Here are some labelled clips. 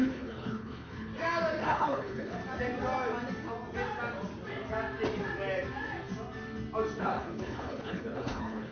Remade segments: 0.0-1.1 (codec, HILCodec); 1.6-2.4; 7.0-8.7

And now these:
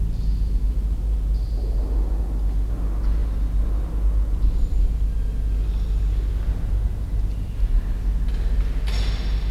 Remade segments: none

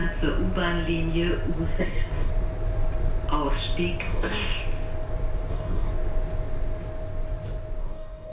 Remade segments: 1.8-2.3 (codec, DAC); 4.0-4.6; 5.5-5.9; 7.8-8.3

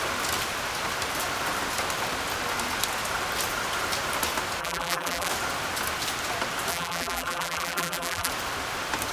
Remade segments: 4.6-5.3 (vocoder, BigVGAN v2); 6.7-8.3